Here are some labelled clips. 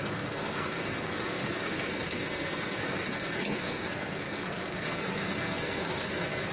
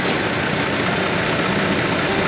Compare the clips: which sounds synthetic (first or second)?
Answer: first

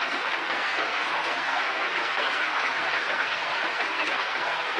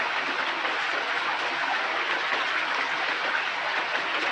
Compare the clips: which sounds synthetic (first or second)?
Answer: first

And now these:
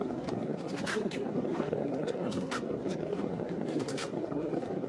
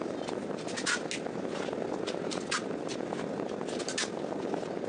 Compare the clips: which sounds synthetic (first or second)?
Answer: first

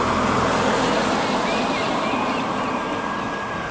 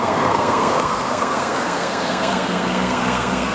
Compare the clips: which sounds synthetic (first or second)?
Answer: second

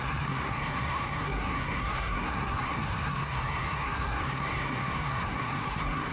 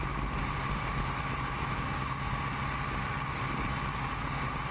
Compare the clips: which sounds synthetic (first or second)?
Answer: first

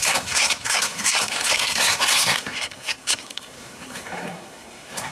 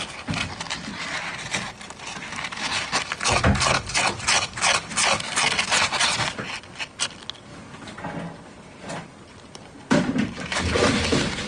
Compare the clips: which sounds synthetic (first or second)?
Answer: first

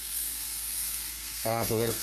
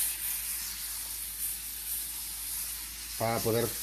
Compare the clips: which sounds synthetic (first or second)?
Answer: first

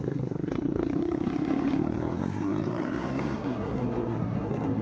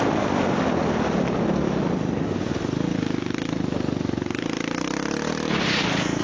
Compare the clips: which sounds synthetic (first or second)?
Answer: first